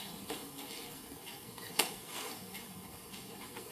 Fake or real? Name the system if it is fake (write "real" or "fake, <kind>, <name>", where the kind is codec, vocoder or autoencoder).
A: fake, codec, SNAC